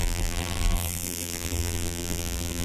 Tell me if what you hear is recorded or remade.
remade